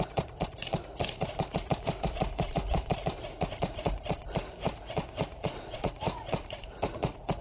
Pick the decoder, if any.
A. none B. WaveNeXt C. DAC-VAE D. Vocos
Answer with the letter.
D